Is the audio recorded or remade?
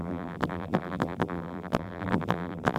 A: remade